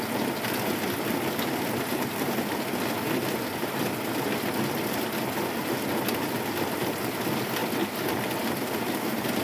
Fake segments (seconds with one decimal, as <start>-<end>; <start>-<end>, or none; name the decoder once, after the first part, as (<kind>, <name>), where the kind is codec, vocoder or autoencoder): none